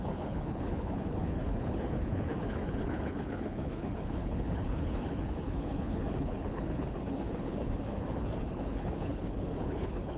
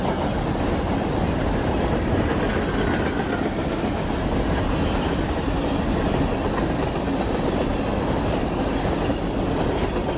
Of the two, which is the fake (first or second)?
first